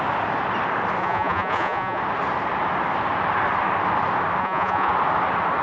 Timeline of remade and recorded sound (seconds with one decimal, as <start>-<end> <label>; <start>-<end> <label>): 0.0-1.0 recorded; 1.0-2.0 remade; 2.0-4.4 recorded; 4.4-4.9 remade; 4.9-5.6 recorded